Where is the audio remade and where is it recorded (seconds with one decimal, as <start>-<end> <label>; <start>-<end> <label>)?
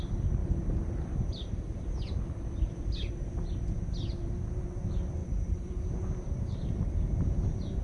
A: 0.0-0.4 recorded; 0.4-2.8 remade; 2.8-5.2 recorded; 5.2-5.7 remade; 5.7-7.8 recorded